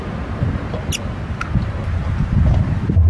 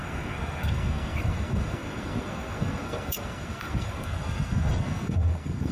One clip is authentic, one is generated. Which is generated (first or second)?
second